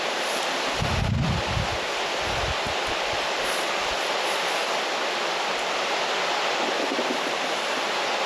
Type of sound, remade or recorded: recorded